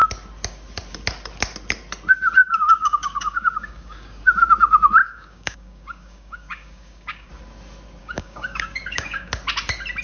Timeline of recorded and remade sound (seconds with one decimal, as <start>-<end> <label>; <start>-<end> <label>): 0.0-2.4 recorded; 2.4-4.2 remade; 4.2-5.0 recorded; 5.0-7.3 remade; 7.3-8.0 recorded; 8.0-9.3 remade; 9.3-10.0 recorded